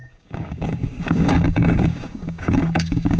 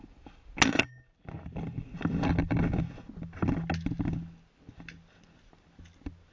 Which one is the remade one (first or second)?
first